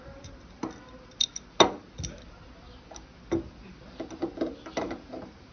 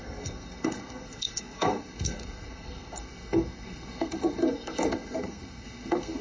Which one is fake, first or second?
second